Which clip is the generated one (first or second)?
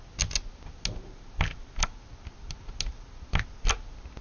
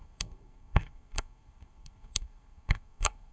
second